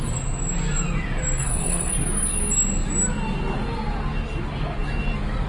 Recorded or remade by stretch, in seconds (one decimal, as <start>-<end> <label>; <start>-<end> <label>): 0.0-1.4 recorded; 1.4-1.9 remade; 1.9-5.5 recorded